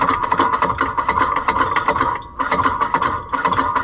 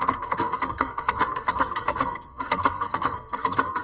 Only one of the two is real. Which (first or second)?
first